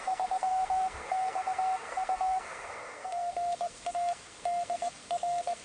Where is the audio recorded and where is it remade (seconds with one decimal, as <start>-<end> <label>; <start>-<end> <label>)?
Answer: 0.0-5.6 remade